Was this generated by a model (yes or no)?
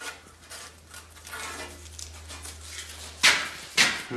no